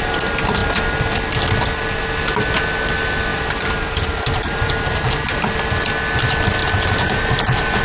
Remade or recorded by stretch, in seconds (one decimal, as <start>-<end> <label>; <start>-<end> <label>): 0.0-3.3 recorded; 3.3-4.7 remade; 4.7-6.6 recorded; 6.6-7.8 remade